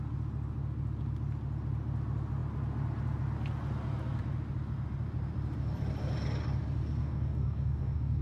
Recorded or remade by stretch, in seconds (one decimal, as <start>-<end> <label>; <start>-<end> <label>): 0.0-7.0 recorded; 7.0-8.2 remade